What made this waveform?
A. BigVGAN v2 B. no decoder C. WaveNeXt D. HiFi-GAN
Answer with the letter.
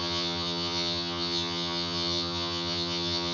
D